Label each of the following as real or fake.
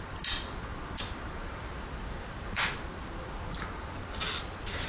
real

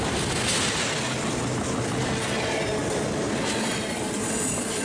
real